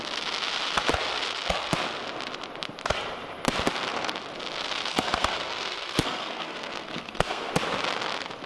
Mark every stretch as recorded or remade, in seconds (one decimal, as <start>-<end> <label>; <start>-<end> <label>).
0.0-4.9 recorded; 4.9-7.5 remade; 7.5-8.5 recorded